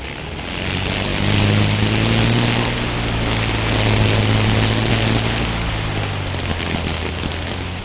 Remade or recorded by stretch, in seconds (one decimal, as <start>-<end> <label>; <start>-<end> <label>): 0.0-7.8 recorded

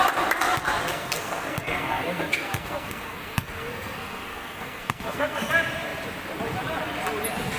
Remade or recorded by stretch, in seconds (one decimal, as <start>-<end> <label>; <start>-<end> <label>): 0.0-0.9 recorded; 0.9-5.5 remade; 5.5-7.6 recorded